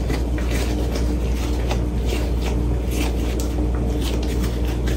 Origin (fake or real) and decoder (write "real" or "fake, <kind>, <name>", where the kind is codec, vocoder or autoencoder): real